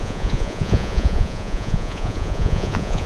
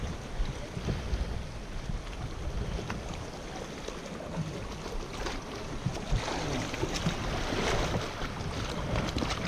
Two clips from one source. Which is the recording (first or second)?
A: second